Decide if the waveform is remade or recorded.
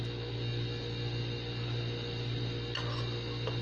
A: recorded